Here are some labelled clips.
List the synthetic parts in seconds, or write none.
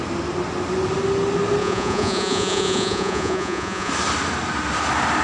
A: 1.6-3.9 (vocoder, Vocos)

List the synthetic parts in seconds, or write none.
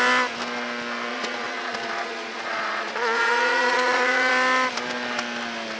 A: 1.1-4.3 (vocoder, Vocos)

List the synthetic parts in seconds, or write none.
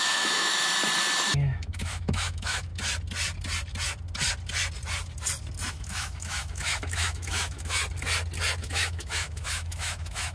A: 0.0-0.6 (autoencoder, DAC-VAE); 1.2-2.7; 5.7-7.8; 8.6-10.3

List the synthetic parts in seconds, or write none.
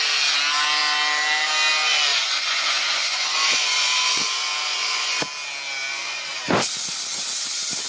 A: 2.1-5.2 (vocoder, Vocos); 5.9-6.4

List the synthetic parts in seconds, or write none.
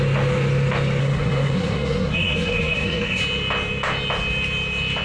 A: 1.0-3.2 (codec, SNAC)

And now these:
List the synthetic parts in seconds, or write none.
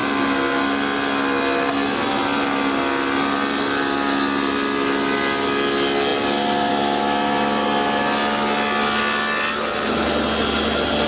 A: none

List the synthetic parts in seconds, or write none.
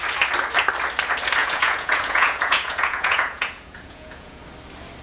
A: 1.4-4.4 (vocoder, Vocos)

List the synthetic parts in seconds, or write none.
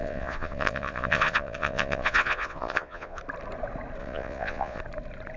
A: 0.0-3.2 (vocoder, Vocos); 4.0-4.8